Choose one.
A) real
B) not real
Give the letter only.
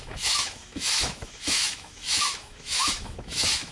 B